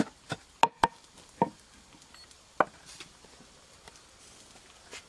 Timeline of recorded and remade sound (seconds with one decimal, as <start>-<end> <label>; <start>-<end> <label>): 0.0-5.1 recorded

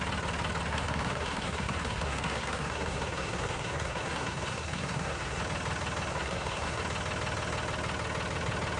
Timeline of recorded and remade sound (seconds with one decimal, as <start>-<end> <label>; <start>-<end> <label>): 0.0-0.7 recorded; 0.7-5.4 remade; 5.4-6.1 recorded; 6.1-6.8 remade; 6.8-8.8 recorded

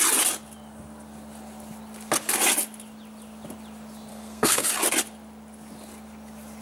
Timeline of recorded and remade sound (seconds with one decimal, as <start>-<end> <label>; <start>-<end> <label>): 0.0-4.1 recorded; 4.1-4.7 remade; 4.7-6.6 recorded

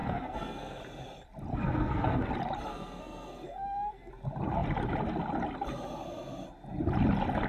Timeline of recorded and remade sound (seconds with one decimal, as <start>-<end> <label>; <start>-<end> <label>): 0.0-0.8 remade; 0.8-1.5 recorded; 1.5-2.3 remade; 2.3-2.7 recorded; 2.7-4.1 remade; 4.1-7.5 recorded

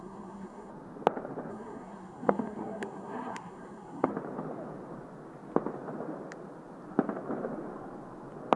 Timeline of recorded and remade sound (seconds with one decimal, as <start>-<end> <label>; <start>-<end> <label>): 0.0-0.7 remade; 0.7-1.5 recorded; 1.5-4.1 remade; 4.1-8.6 recorded

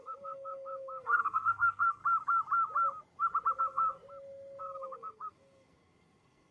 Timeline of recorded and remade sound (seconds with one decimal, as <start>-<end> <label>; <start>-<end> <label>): 0.0-2.0 remade; 2.0-3.6 recorded; 3.6-4.0 remade; 4.0-4.6 recorded; 4.6-6.5 remade

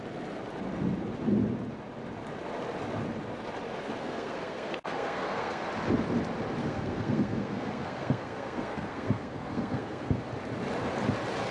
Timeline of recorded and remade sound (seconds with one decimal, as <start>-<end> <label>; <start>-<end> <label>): 0.0-4.0 recorded; 4.0-5.6 remade; 5.6-6.6 recorded; 6.6-10.2 remade; 10.2-11.5 recorded

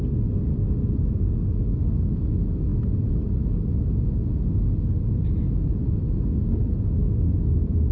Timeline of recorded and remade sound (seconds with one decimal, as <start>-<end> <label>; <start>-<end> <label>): 0.0-7.9 recorded